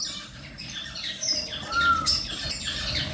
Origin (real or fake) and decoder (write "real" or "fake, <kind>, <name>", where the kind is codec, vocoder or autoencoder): fake, vocoder, BigVGAN v2